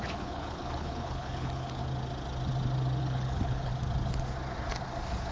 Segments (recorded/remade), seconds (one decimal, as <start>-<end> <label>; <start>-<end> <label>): 0.0-1.8 remade; 1.8-3.0 recorded; 3.0-3.7 remade; 3.7-5.3 recorded